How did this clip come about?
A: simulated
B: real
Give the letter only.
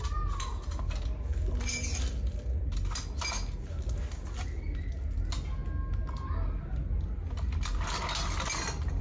B